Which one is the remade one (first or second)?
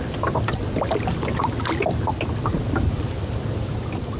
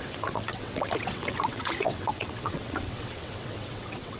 second